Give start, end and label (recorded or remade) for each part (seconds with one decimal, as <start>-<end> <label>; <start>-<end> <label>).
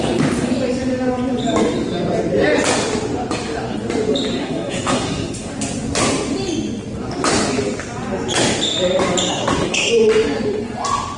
0.0-4.4 recorded; 4.4-5.5 remade; 5.5-9.3 recorded; 9.3-9.9 remade; 9.9-11.2 recorded